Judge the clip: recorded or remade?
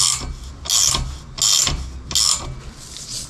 recorded